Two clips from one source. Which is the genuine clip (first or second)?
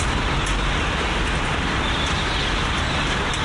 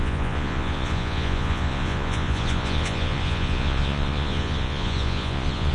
first